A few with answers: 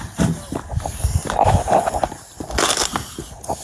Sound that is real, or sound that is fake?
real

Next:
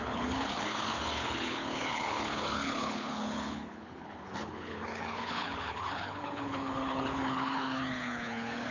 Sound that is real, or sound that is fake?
fake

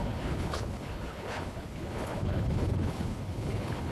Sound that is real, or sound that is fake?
fake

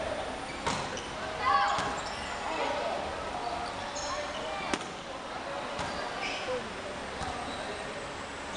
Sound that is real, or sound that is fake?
real